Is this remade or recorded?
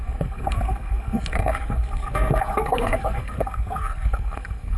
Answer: remade